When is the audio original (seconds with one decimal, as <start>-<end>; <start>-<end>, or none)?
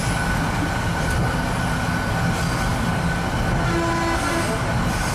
0.0-5.1